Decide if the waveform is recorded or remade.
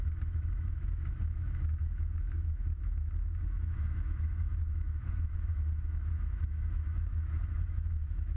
remade